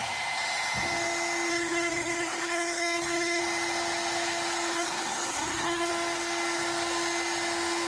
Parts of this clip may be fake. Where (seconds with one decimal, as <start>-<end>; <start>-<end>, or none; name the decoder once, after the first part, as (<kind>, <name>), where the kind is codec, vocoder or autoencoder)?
1.5-3.4 (codec, SNAC); 4.7-5.9